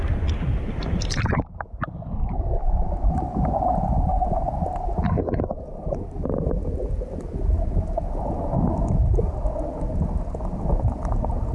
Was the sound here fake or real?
real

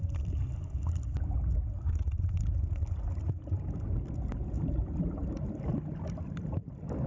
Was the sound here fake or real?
real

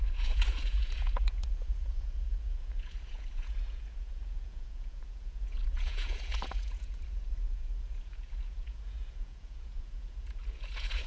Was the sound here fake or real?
fake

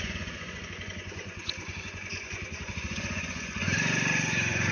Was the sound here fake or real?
fake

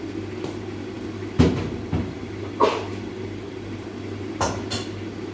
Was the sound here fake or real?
real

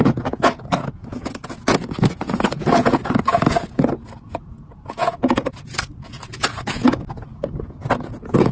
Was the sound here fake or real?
fake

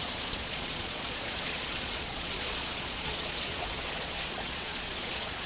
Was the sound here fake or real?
fake